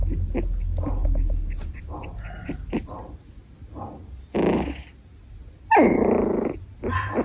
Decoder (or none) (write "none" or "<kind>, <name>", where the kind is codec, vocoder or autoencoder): none